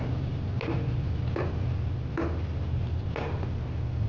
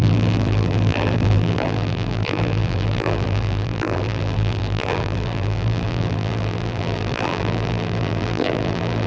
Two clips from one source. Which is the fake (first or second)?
second